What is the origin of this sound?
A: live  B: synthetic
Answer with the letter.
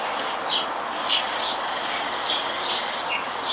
A